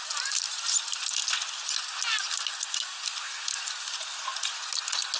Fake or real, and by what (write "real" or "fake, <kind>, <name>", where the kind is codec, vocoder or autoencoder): real